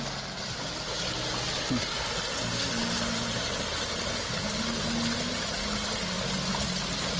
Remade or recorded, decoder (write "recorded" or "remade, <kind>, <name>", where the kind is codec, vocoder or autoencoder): recorded